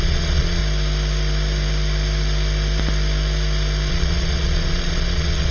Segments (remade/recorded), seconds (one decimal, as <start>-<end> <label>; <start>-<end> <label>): 0.0-0.6 remade; 0.6-3.9 recorded; 3.9-5.5 remade